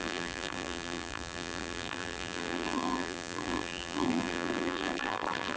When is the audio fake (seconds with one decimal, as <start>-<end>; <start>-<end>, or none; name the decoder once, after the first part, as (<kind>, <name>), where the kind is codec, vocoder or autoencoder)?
0.0-5.6 (vocoder, BigVGAN v2)